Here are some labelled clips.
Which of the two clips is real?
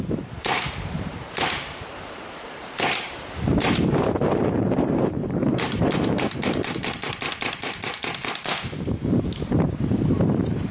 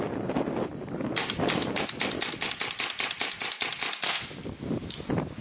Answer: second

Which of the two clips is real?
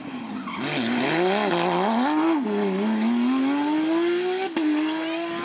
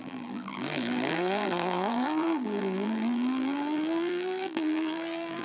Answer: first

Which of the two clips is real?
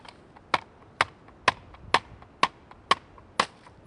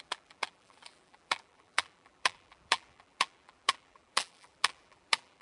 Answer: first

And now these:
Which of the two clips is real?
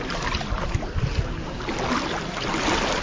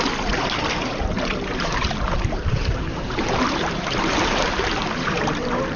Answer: first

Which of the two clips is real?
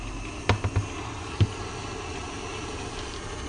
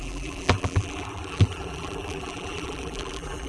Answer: first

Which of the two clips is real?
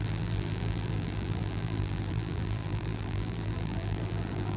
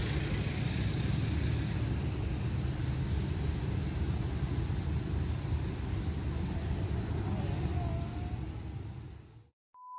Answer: second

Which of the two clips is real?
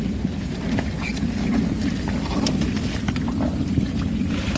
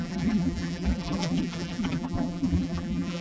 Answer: first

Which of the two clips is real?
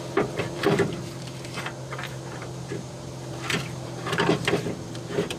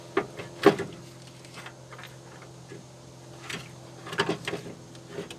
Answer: second